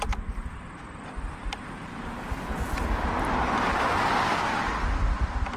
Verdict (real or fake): real